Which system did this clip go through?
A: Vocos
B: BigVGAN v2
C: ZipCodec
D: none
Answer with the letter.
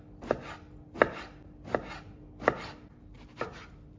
D